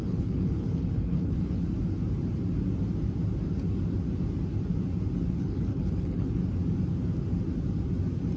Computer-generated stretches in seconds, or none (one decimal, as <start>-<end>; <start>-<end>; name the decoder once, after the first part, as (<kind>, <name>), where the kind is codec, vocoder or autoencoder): 0.0-1.6 (codec, HILCodec); 5.3-6.4